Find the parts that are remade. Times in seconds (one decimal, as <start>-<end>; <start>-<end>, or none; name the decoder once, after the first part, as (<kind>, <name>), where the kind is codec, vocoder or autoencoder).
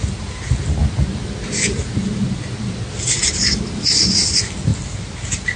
none